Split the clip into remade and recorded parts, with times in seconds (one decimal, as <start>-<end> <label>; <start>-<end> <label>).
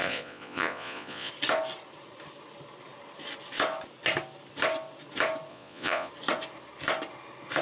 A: 0.0-1.3 remade; 1.3-5.5 recorded; 5.5-6.1 remade; 6.1-7.6 recorded